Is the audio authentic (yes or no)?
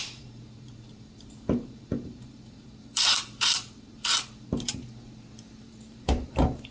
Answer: no